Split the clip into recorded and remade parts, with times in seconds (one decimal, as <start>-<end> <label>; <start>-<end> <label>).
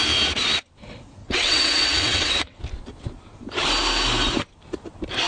0.0-1.2 recorded; 1.2-2.6 remade; 2.6-5.3 recorded